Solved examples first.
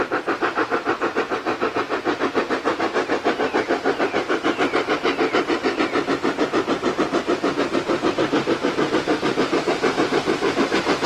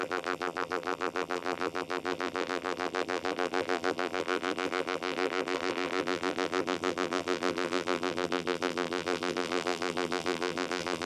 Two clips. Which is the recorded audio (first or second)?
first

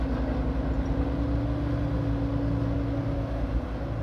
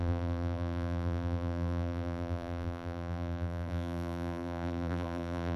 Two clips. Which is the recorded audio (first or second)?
first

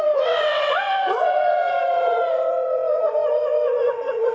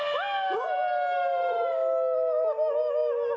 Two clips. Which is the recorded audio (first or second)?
second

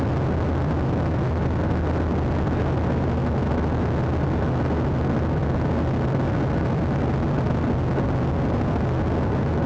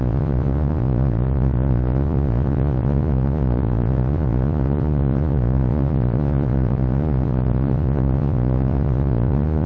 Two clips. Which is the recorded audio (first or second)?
first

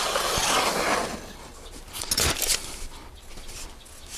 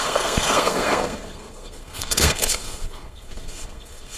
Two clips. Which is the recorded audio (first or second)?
first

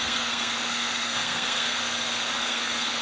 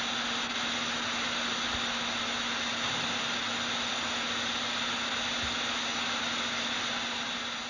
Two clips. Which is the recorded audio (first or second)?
second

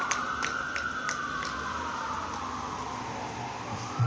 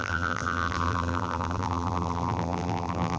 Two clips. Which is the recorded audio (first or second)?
first